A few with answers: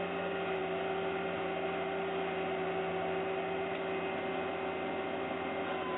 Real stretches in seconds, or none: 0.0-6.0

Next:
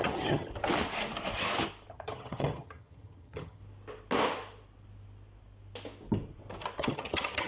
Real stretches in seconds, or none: 0.5-1.9; 3.6-6.8

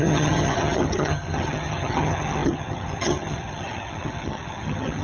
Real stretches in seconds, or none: none

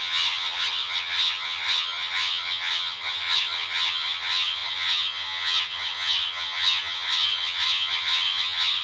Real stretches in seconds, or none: none

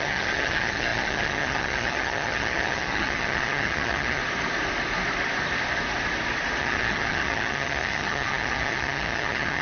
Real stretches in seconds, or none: 4.2-6.6